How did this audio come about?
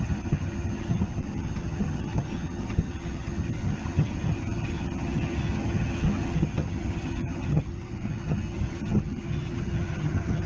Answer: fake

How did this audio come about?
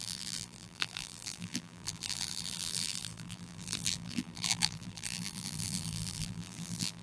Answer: fake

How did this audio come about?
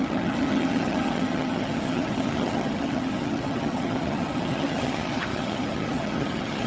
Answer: fake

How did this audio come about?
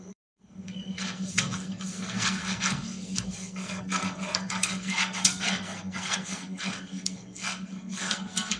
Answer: fake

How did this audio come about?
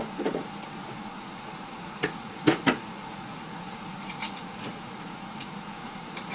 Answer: fake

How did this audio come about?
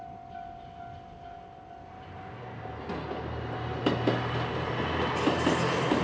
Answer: real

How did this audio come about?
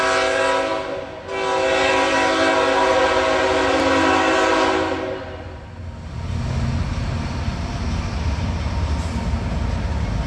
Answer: real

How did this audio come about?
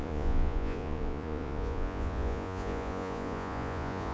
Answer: fake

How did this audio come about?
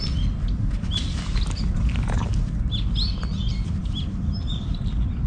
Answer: real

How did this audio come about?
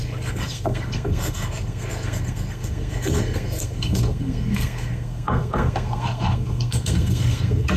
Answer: fake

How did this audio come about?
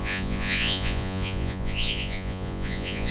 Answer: fake